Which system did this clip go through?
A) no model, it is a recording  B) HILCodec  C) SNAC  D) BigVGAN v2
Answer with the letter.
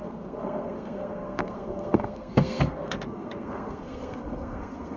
C